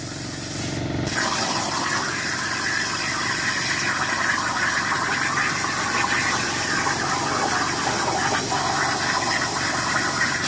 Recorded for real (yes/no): yes